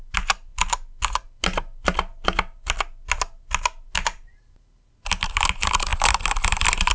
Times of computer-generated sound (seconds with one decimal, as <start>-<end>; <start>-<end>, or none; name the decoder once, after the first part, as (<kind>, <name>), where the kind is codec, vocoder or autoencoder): none